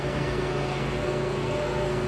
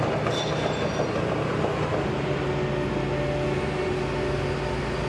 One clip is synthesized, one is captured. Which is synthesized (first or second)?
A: first